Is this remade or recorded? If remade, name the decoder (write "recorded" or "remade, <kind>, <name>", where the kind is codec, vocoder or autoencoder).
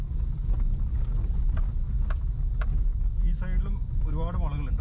recorded